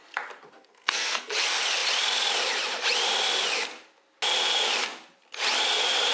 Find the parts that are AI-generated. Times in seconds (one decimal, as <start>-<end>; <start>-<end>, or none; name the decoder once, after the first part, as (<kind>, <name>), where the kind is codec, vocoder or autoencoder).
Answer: 0.5-1.3 (codec, SNAC)